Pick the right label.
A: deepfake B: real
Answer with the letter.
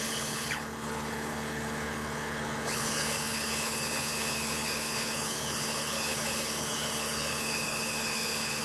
A